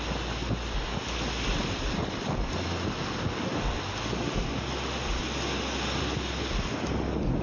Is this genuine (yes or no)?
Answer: yes